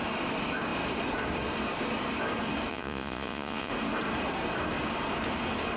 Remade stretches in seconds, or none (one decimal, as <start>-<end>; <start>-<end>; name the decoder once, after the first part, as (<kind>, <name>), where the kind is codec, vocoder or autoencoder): 2.7-3.7 (vocoder, Vocos)